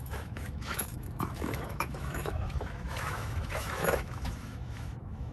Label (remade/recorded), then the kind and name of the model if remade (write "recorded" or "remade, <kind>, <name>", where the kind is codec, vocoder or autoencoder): remade, autoencoder, DAC-VAE